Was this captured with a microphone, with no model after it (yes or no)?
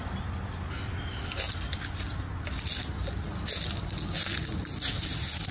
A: yes